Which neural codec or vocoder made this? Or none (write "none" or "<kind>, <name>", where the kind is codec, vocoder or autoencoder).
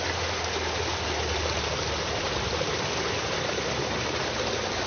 none